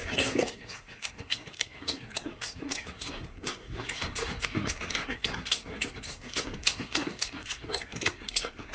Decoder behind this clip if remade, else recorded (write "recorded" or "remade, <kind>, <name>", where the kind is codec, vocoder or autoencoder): remade, codec, SNAC